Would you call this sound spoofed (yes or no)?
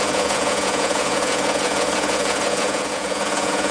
yes